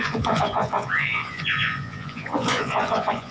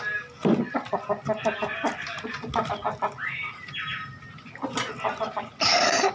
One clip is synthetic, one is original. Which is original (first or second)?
second